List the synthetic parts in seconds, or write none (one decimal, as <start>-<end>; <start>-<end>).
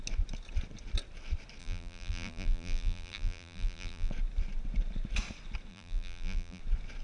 1.6-4.1; 5.7-6.6